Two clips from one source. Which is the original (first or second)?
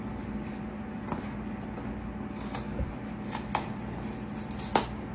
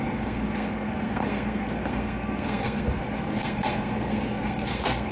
first